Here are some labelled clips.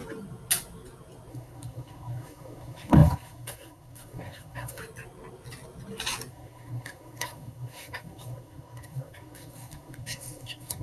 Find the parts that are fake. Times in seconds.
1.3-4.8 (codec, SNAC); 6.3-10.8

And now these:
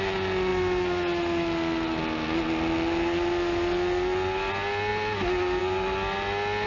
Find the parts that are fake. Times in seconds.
none

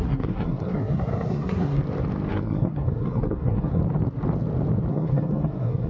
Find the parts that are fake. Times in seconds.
0.0-1.8 (codec, SNAC); 2.3-3.8; 4.9-5.9